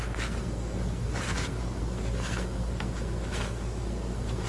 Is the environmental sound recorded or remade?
remade